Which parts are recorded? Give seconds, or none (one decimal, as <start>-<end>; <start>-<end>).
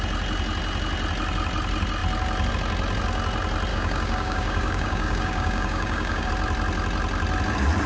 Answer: 0.0-3.7; 6.3-7.9